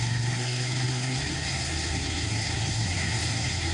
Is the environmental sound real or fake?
fake